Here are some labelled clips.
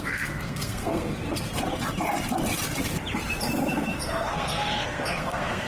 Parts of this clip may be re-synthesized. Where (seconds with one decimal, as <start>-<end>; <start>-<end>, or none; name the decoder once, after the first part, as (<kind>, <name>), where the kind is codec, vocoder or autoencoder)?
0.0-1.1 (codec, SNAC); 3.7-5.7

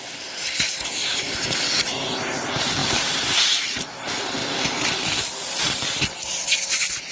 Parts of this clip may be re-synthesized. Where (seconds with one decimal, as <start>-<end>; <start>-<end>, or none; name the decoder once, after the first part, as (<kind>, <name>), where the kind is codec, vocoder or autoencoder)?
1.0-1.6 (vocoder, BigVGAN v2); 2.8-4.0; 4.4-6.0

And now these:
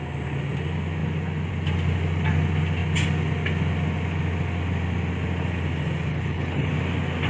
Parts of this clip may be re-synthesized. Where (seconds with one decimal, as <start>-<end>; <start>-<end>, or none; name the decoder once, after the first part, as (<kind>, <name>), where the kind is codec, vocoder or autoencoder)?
6.1-6.7 (codec, HILCodec)